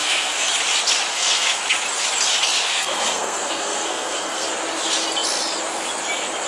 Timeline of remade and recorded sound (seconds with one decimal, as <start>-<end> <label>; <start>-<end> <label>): 0.0-0.5 remade; 0.5-1.1 recorded; 1.1-1.6 remade; 1.6-2.7 recorded; 2.7-4.5 remade; 4.5-6.5 recorded